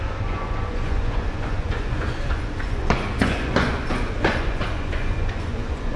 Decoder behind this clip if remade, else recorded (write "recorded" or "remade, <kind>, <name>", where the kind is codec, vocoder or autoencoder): remade, vocoder, Vocos